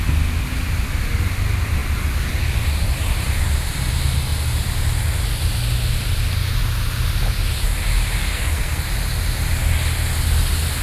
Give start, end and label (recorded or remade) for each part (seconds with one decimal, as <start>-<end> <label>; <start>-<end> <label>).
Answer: 0.0-8.2 recorded; 8.2-8.9 remade; 8.9-10.8 recorded